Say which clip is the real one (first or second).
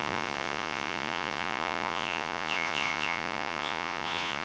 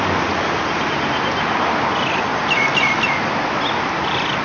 second